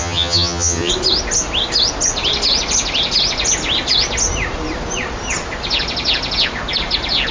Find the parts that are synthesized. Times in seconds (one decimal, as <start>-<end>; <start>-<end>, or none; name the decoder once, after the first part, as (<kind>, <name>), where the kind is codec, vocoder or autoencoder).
0.0-0.9 (vocoder, HiFi-GAN)